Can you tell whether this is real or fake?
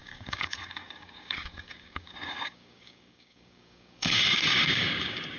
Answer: fake